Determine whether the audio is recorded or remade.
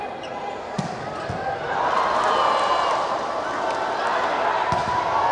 recorded